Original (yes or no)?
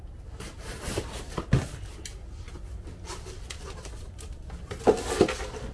yes